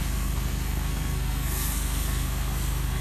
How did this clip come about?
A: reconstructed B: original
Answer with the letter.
A